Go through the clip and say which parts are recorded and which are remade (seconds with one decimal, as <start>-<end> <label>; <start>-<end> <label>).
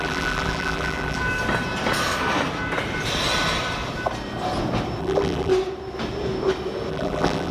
0.0-1.2 remade; 1.2-5.0 recorded; 5.0-5.5 remade; 5.5-6.9 recorded; 6.9-7.5 remade